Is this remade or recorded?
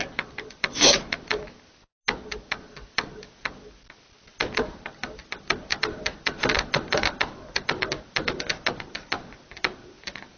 recorded